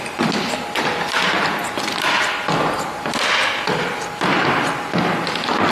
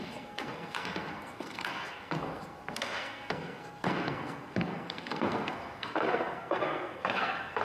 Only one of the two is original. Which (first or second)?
first